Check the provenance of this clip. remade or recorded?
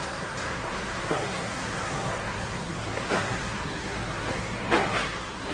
remade